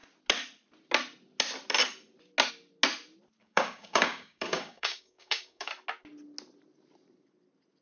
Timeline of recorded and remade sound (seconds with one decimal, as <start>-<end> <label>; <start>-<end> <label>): 0.0-3.4 recorded; 3.4-5.7 remade; 5.7-7.8 recorded